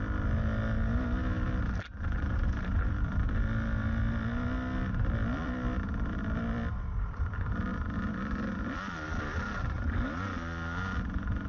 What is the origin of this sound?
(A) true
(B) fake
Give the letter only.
A